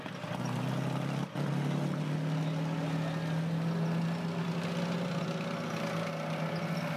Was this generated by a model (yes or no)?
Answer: no